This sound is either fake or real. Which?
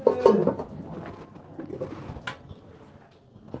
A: real